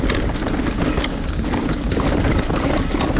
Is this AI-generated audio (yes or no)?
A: no